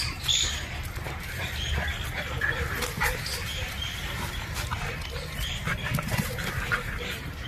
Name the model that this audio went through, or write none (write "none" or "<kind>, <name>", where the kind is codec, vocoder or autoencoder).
none